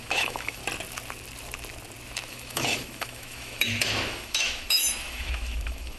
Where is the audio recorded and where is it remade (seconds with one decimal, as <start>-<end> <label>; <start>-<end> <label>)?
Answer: 0.0-0.6 remade; 0.6-2.3 recorded; 2.3-6.0 remade